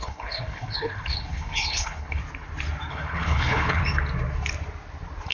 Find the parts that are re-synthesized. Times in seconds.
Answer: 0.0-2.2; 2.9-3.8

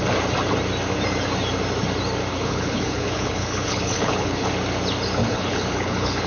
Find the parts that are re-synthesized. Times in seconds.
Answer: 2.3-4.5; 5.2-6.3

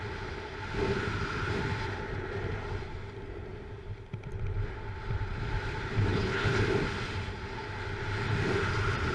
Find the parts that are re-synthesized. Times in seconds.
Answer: 6.1-6.6

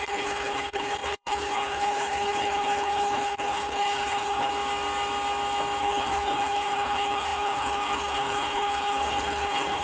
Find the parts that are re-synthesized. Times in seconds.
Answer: 0.0-4.5; 5.8-9.8

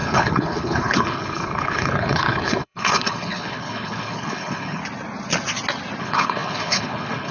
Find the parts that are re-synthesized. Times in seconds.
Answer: 0.0-4.8; 6.0-7.3

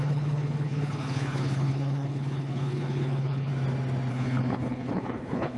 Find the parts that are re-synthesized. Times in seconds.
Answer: 0.0-3.5; 4.1-5.6

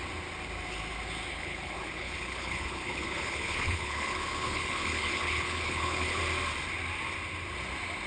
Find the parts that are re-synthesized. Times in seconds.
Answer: 1.3-6.2

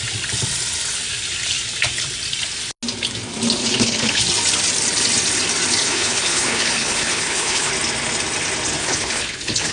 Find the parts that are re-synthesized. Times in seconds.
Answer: 3.6-4.2; 5.8-7.7; 8.8-9.7